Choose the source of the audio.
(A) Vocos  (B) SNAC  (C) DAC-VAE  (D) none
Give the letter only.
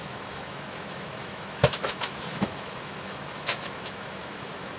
C